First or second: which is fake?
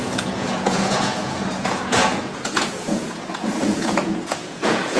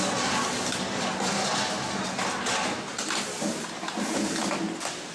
first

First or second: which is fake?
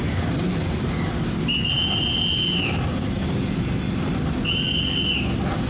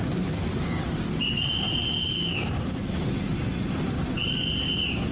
second